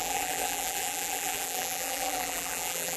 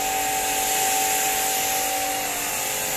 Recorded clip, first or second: second